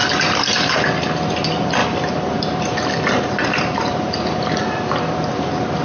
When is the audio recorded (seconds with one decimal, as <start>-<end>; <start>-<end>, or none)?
0.7-1.8; 5.3-5.8